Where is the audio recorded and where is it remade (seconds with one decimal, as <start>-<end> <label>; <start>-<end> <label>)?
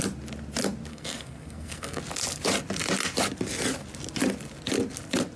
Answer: 0.0-0.9 recorded; 0.9-2.0 remade; 2.0-5.4 recorded